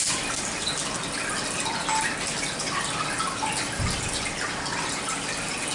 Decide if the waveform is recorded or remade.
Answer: recorded